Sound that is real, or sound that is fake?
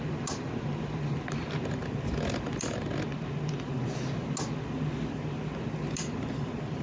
real